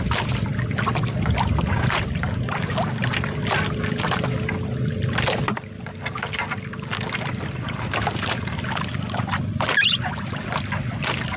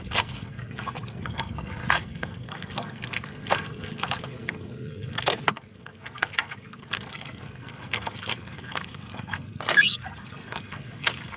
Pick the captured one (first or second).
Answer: first